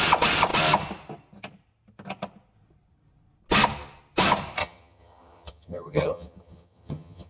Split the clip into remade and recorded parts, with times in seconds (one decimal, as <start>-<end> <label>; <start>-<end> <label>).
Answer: 0.0-4.6 recorded; 4.6-7.3 remade